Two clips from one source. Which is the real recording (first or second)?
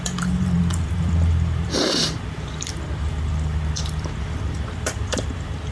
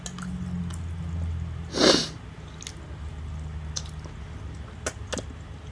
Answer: second